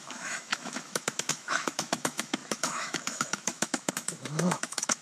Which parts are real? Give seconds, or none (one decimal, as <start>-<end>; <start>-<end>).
none